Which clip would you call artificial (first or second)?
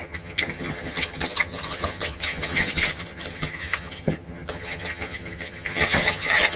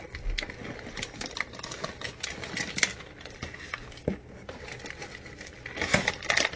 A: first